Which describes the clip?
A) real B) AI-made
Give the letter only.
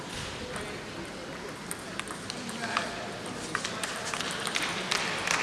A